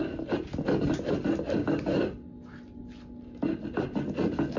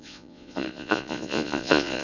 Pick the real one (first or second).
first